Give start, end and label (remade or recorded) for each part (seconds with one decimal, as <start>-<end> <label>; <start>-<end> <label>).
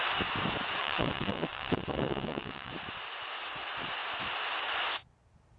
0.0-0.8 recorded; 0.8-2.7 remade; 2.7-5.6 recorded